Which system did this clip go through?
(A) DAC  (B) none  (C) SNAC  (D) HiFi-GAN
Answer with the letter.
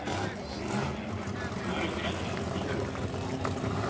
B